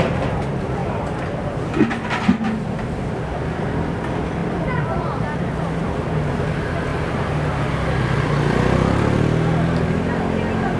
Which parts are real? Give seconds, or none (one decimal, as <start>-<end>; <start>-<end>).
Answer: 0.0-10.8

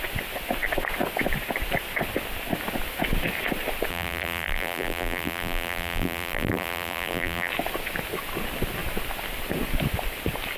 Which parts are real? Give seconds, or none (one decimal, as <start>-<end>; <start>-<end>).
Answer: 0.0-3.9; 7.5-10.6

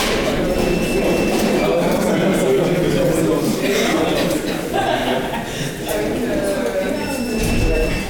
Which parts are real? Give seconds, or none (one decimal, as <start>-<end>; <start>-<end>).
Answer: 5.0-6.9

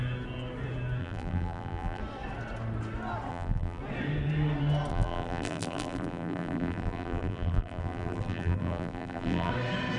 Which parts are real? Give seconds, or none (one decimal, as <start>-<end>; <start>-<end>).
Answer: 0.0-1.0; 2.0-3.3; 3.8-4.9; 9.5-10.0

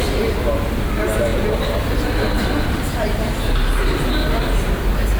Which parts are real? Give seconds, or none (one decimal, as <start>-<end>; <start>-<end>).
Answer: 0.0-5.2

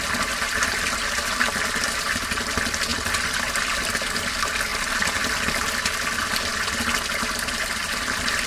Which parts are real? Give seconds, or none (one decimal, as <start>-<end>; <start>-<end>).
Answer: 0.0-4.7; 5.8-8.5